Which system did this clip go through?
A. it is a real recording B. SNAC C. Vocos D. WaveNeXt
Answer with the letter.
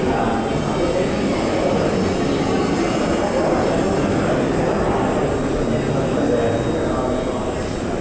A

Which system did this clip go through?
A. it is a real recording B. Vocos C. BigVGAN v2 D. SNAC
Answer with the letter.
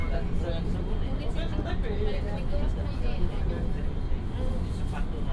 A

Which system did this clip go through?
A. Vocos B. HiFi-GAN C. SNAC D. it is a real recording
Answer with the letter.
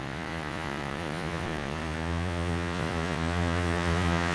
A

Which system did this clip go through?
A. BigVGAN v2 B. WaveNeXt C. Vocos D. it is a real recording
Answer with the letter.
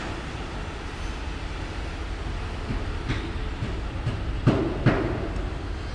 D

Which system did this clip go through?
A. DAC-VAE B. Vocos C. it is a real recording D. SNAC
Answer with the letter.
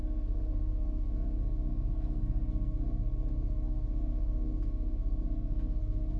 D